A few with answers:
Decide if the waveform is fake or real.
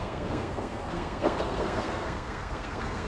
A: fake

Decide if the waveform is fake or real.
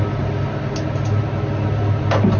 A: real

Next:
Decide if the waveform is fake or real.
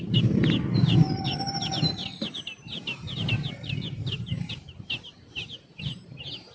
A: fake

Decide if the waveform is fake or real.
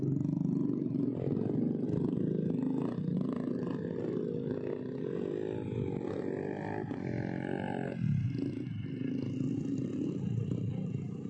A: real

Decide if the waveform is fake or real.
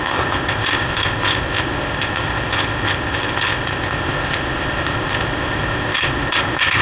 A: fake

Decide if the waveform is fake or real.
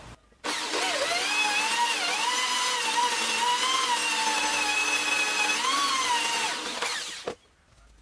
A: real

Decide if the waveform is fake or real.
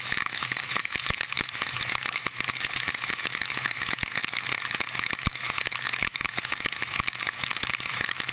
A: fake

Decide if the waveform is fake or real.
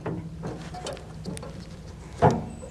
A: real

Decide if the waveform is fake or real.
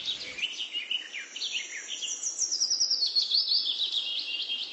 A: real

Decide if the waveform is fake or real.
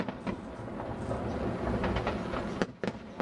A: real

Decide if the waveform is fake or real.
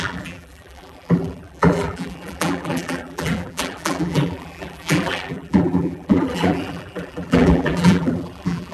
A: fake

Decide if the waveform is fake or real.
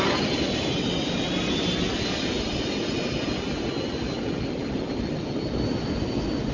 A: real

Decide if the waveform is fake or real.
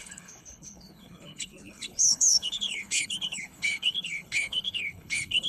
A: fake